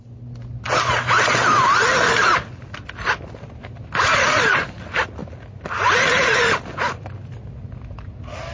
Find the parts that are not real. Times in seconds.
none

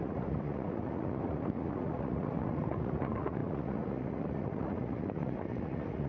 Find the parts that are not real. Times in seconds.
0.0-6.1

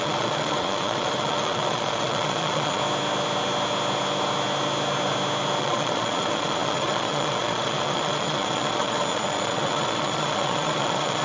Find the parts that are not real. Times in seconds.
0.0-2.8; 5.6-11.2

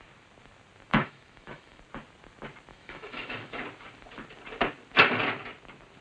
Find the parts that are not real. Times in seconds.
0.9-1.8; 2.7-3.6